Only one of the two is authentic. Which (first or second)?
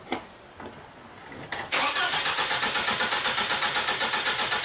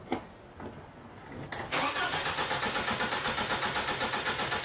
second